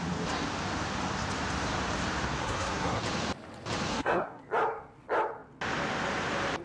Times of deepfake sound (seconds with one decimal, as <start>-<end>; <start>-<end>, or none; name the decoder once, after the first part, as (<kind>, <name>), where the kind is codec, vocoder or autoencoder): 2.4-3.0 (codec, SNAC); 3.9-4.4